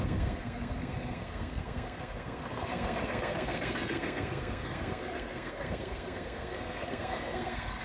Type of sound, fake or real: fake